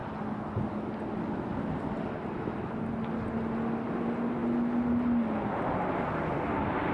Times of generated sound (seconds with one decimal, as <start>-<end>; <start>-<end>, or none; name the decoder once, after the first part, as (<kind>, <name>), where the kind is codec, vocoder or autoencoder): none